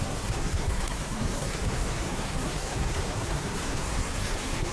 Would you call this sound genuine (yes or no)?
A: no